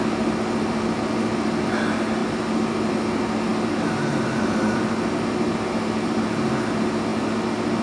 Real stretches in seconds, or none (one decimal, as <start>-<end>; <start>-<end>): 0.0-7.8